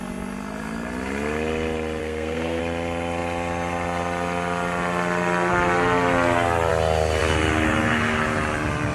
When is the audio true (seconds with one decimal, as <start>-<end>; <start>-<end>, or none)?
0.0-2.0; 2.6-8.9